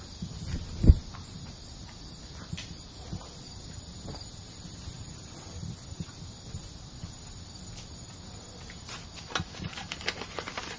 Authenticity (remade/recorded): remade